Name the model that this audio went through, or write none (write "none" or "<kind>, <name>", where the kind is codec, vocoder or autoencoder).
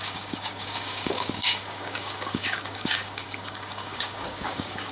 codec, DAC